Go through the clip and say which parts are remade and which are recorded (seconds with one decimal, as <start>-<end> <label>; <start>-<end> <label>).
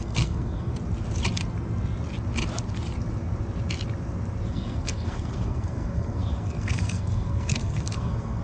0.0-0.7 remade; 0.7-4.5 recorded; 4.5-8.4 remade